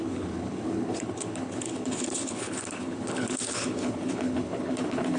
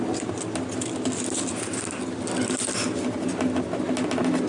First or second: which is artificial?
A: first